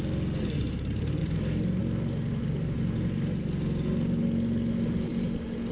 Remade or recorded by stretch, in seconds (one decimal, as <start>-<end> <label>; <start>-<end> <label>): 0.0-5.7 recorded